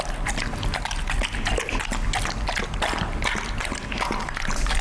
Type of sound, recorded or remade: recorded